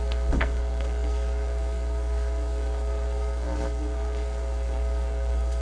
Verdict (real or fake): fake